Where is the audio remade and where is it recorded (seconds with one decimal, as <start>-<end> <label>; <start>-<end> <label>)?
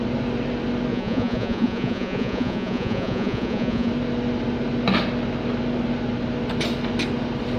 0.0-0.9 recorded; 0.9-3.9 remade; 3.9-7.6 recorded